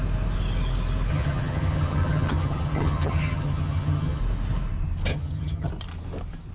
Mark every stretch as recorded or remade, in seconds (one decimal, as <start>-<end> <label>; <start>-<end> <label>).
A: 0.0-1.1 recorded; 1.1-4.2 remade; 4.2-5.1 recorded; 5.1-5.7 remade; 5.7-6.5 recorded